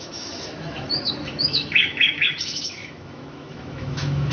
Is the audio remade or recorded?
remade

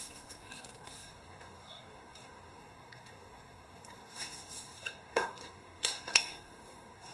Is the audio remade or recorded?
remade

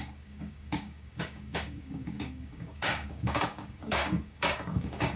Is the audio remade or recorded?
remade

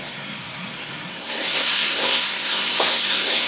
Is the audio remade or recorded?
remade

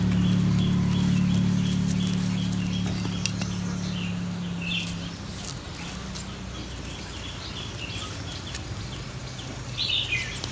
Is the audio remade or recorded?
recorded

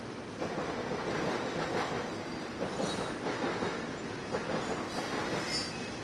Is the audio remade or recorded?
recorded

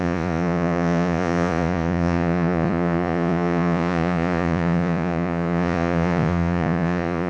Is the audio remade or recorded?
remade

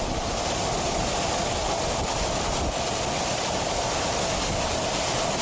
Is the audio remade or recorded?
recorded